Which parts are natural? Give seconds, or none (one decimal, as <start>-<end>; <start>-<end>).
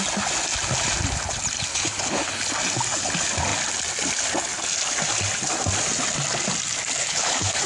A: 0.0-1.7; 2.3-7.0